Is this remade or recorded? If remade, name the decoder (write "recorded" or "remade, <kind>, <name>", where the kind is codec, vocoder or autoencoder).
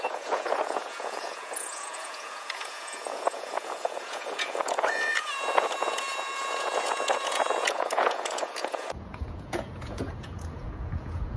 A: remade, vocoder, Vocos